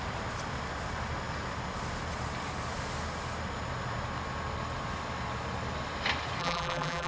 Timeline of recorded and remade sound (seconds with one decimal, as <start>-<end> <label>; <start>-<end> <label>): 0.0-6.4 recorded; 6.4-7.1 remade